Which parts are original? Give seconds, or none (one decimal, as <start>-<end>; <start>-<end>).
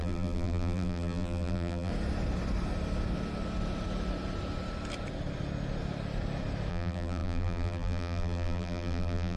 1.9-6.7